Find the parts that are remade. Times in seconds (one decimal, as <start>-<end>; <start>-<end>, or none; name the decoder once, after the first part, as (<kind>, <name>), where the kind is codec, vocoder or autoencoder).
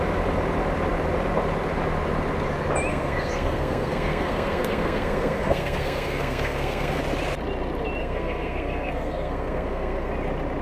2.9-7.0 (codec, SNAC); 8.0-10.1